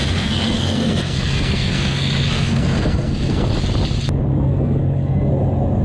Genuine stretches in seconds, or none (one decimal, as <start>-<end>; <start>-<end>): 3.5-4.3; 5.3-5.8